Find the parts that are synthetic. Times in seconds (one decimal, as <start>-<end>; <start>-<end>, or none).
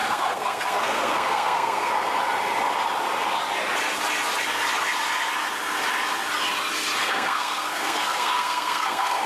0.0-1.9; 7.0-9.3